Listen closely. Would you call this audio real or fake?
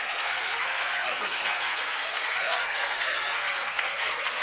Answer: fake